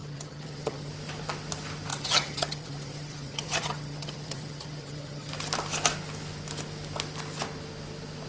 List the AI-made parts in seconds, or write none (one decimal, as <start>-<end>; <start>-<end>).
0.0-0.9; 1.9-5.3